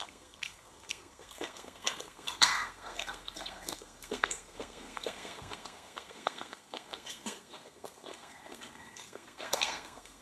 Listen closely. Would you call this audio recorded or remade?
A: remade